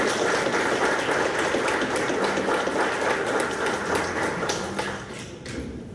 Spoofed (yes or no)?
no